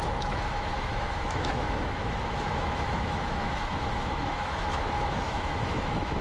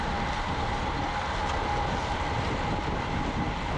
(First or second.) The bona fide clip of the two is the second